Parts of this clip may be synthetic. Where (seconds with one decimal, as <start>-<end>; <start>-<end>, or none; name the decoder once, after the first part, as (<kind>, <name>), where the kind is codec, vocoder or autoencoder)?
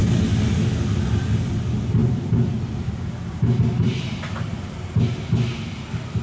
2.0-5.3 (vocoder, BigVGAN v2)